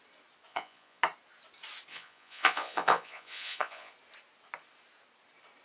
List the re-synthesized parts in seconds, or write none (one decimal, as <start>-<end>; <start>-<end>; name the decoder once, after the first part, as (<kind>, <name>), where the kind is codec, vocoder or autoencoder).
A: 0.5-1.0 (vocoder, Vocos); 1.9-3.9